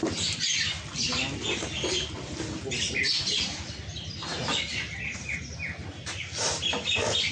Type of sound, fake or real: real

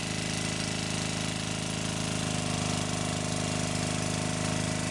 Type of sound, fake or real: real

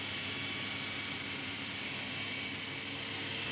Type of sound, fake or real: real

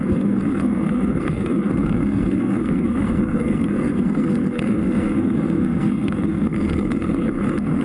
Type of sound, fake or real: fake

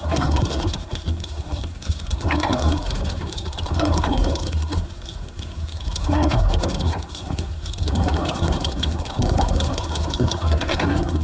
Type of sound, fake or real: fake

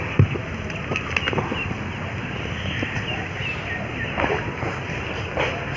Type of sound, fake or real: real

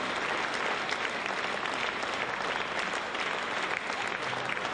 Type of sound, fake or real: real